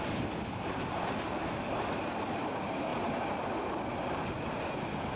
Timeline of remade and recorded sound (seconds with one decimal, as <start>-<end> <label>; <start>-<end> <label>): 0.0-5.2 recorded